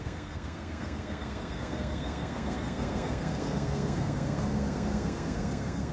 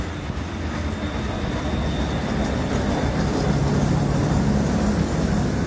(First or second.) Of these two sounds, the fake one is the first